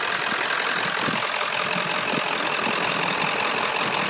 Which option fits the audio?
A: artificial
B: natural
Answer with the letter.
A